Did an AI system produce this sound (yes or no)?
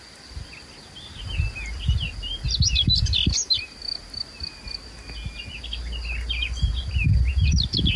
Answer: no